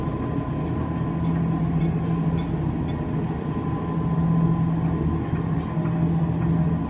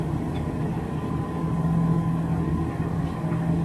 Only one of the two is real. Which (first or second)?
first